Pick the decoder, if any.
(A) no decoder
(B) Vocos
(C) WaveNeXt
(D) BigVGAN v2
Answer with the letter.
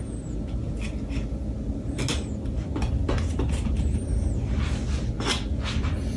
A